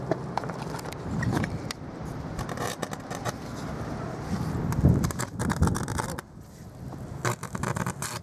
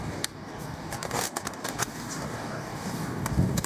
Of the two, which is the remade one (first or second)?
second